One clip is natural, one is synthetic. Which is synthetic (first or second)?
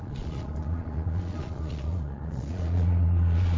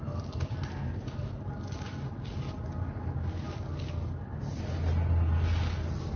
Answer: first